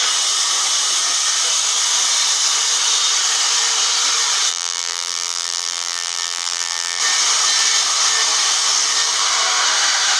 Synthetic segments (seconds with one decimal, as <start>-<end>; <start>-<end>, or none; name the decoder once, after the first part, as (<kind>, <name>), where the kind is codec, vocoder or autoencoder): 4.5-7.0 (vocoder, BigVGAN v2)